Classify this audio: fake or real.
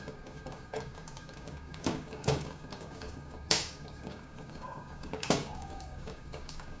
fake